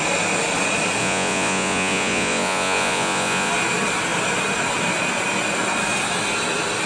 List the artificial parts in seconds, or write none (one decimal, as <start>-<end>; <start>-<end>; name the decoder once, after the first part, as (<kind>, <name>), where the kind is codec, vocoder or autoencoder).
1.0-3.5 (vocoder, Vocos)